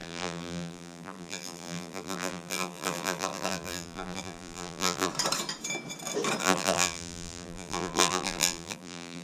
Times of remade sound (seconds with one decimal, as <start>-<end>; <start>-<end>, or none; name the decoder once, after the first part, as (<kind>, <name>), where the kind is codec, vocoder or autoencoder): 0.0-5.1 (vocoder, BigVGAN v2); 6.4-9.2